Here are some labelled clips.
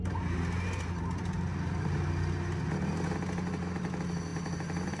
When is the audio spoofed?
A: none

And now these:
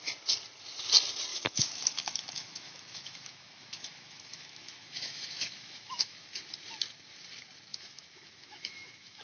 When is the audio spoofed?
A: 1.3-6.4 (autoencoder, DAC-VAE); 7.7-9.2

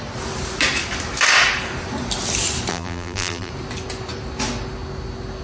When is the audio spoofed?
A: 2.7-3.5 (vocoder, BigVGAN v2)